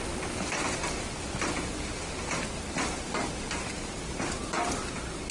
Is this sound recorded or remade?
recorded